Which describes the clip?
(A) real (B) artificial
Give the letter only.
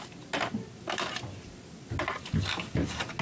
A